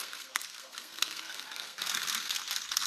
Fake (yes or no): yes